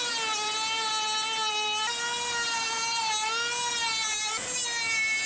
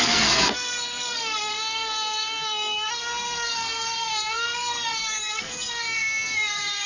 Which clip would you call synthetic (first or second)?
second